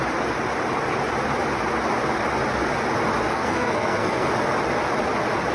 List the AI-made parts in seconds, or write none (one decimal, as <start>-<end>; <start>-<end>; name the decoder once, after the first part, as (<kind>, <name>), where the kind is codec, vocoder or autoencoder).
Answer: 3.3-4.3 (codec, SNAC)